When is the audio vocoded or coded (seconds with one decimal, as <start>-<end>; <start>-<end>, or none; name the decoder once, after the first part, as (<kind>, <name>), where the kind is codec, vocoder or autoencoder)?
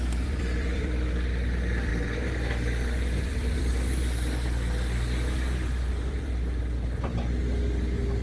0.0-1.9 (vocoder, BigVGAN v2); 3.2-3.7; 5.9-8.2